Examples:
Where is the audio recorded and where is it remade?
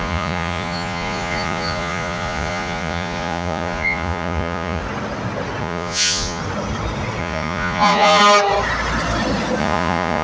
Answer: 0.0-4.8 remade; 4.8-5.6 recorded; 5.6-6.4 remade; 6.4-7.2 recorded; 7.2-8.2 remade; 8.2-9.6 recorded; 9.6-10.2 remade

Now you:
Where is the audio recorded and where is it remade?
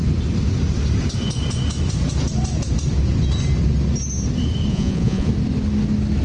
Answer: 0.0-4.7 recorded; 4.7-5.3 remade; 5.3-6.2 recorded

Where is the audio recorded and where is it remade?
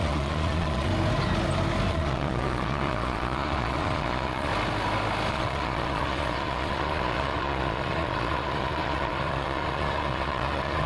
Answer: 0.0-0.9 remade; 0.9-1.9 recorded; 1.9-4.5 remade; 4.5-5.3 recorded; 5.3-10.9 remade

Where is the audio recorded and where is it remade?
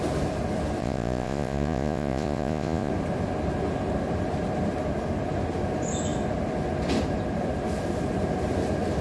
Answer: 0.0-0.8 recorded; 0.8-2.9 remade; 2.9-9.0 recorded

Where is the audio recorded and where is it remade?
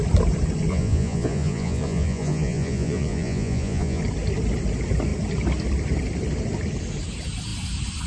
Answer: 0.0-0.7 recorded; 0.7-4.0 remade; 4.0-8.1 recorded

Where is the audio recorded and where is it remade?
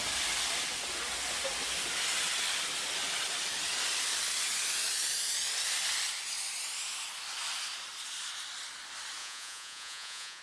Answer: 0.0-9.2 recorded; 9.2-10.4 remade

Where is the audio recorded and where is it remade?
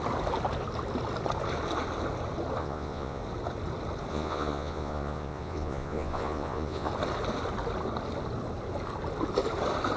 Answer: 0.0-2.6 recorded; 2.6-3.2 remade; 3.2-4.1 recorded; 4.1-6.9 remade; 6.9-10.0 recorded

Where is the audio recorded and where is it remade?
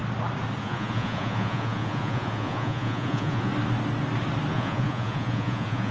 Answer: 0.0-0.6 recorded; 0.6-3.5 remade; 3.5-4.5 recorded; 4.5-5.9 remade